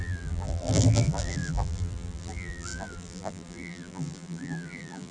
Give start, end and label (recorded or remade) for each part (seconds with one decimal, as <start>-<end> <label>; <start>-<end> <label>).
0.0-5.1 remade

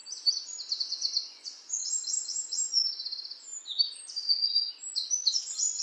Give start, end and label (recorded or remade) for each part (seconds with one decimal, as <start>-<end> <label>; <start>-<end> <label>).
0.0-0.8 recorded; 0.8-1.8 remade; 1.8-5.3 recorded; 5.3-5.8 remade

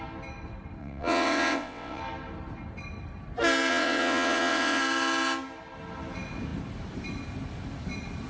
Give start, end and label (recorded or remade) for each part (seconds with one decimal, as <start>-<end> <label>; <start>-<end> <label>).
0.0-0.8 recorded; 0.8-2.0 remade; 2.0-3.7 recorded; 3.7-4.8 remade; 4.8-8.3 recorded

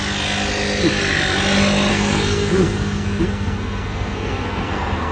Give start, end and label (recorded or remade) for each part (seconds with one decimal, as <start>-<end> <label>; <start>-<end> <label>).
0.0-1.9 recorded; 1.9-5.1 remade

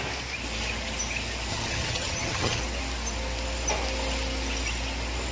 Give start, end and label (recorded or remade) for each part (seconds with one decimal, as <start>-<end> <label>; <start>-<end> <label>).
0.0-1.5 recorded; 1.5-2.6 remade; 2.6-5.3 recorded

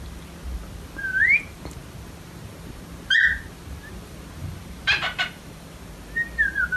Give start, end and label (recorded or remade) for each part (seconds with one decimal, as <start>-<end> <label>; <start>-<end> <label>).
0.0-4.4 recorded; 4.4-5.8 remade; 5.8-6.8 recorded